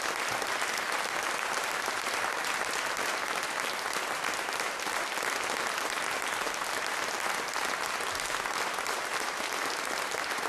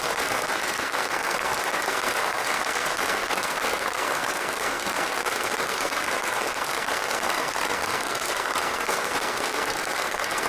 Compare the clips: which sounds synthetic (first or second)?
second